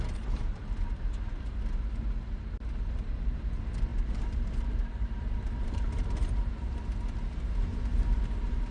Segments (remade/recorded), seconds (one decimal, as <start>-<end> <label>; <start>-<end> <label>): 0.0-3.9 recorded; 3.9-7.0 remade; 7.0-7.9 recorded; 7.9-8.7 remade